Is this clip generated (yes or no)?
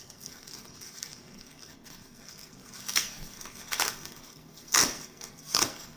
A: yes